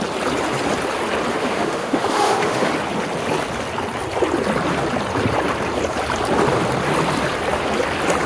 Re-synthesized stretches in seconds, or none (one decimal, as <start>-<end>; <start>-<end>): 1.3-2.7